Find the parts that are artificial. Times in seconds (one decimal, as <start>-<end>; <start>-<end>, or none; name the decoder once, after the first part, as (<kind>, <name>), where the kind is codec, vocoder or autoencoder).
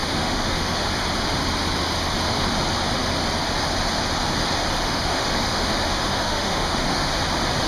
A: 0.0-0.9 (autoencoder, DAC-VAE); 4.8-7.1